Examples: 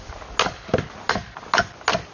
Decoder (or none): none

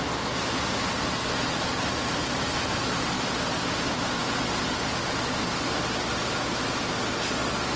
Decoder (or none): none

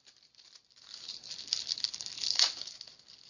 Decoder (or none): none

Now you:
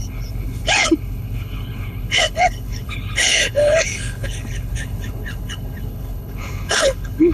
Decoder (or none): codec, HILCodec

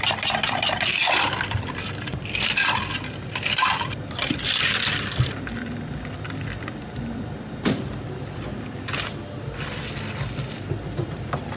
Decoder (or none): vocoder, BigVGAN v2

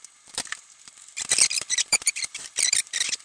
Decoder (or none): vocoder, BigVGAN v2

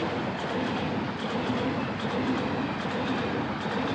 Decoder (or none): none